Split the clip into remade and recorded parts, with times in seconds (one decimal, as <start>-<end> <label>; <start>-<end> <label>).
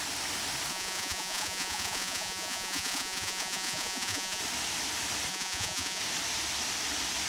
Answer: 0.0-0.7 recorded; 0.7-4.4 remade; 4.4-5.3 recorded; 5.3-6.0 remade; 6.0-7.3 recorded